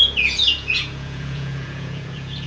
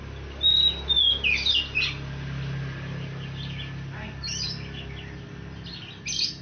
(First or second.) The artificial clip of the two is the first